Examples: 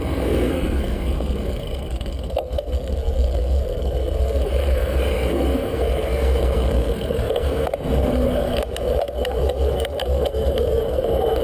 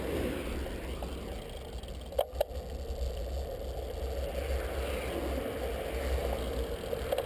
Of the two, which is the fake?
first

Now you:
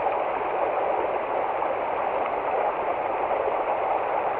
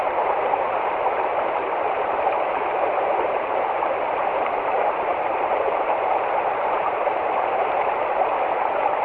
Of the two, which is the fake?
second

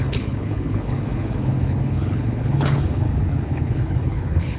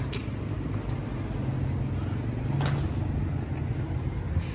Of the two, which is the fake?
first